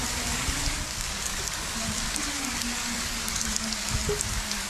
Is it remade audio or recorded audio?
remade